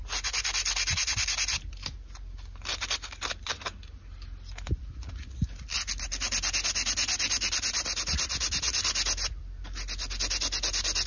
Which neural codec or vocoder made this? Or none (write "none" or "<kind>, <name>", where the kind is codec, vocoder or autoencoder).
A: none